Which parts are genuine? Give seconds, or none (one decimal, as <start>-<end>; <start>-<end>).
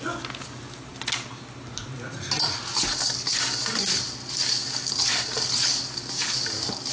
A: 0.0-6.9